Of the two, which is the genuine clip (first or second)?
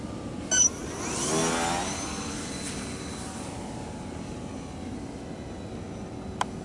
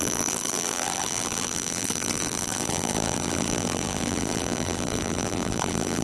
first